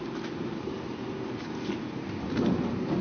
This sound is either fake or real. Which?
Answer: real